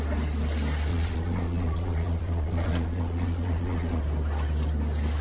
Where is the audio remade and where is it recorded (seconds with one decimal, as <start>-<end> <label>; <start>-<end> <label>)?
0.0-0.9 recorded; 0.9-4.0 remade; 4.0-5.2 recorded